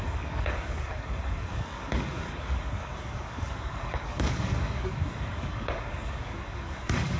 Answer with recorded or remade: remade